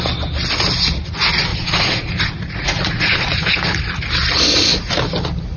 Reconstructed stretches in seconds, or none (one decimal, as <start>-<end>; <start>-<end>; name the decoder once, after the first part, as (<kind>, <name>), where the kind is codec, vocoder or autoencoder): 1.5-4.0 (vocoder, Vocos)